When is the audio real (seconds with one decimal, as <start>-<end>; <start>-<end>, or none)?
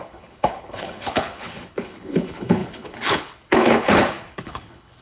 none